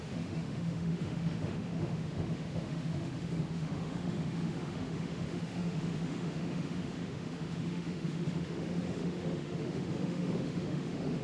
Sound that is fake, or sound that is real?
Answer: fake